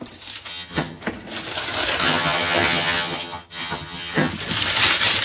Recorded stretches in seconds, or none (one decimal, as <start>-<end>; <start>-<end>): 0.0-0.5; 1.0-2.0; 4.3-5.2